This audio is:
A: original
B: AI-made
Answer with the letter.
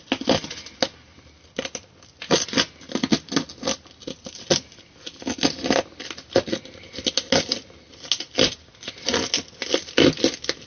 A